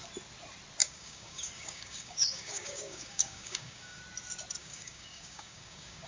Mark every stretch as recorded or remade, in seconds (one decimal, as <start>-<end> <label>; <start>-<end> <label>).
0.0-0.8 recorded; 0.8-4.0 remade; 4.0-4.6 recorded; 4.6-6.1 remade